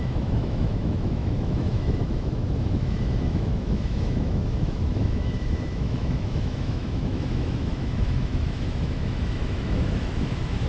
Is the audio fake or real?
fake